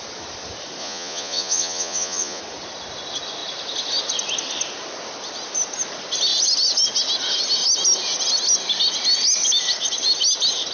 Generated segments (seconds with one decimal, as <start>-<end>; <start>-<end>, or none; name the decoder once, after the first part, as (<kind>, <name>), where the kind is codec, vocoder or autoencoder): 0.8-2.4 (vocoder, Vocos)